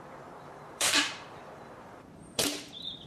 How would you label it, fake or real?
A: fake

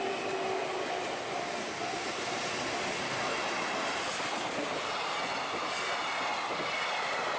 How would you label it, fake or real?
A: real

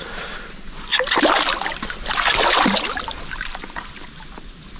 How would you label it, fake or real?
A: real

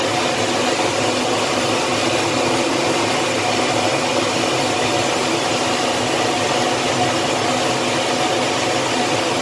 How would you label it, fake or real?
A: real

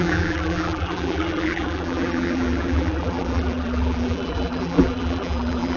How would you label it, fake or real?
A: fake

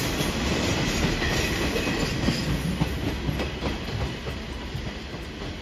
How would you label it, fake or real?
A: real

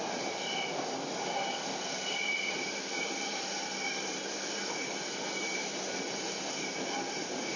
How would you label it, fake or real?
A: fake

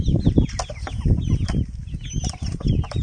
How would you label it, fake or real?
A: real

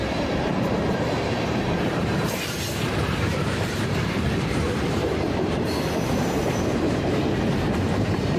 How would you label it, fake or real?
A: fake